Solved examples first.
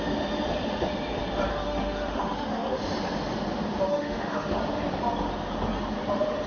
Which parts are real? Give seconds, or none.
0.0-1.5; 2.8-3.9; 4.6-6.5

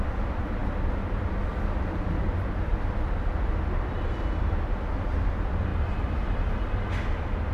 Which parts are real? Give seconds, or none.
0.0-7.5

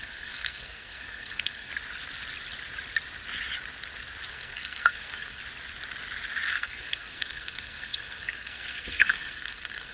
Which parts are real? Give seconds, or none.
1.7-4.3; 5.4-6.5

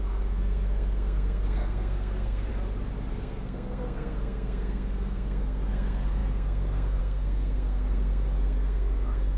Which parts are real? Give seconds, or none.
2.5-3.1